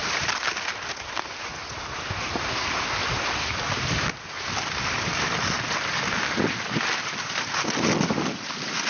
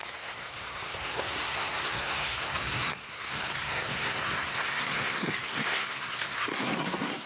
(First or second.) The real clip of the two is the first